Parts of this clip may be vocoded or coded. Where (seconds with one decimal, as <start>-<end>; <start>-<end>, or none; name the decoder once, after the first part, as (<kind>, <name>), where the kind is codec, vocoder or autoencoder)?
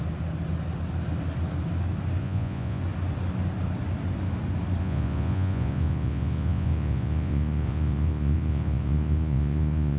2.2-2.8 (vocoder, Vocos); 4.8-10.0